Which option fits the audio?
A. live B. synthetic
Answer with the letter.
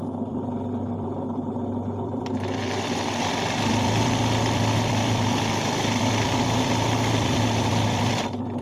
B